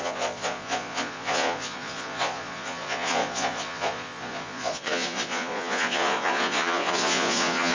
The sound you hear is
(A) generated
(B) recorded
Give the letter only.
A